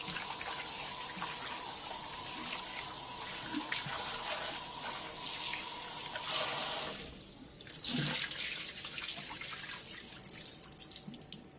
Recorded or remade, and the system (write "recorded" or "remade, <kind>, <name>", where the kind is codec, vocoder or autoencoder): recorded